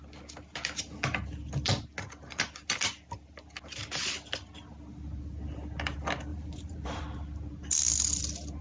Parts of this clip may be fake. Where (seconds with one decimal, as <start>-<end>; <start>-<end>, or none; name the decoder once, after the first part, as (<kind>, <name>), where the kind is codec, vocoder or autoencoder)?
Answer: 6.3-7.0 (vocoder, BigVGAN v2)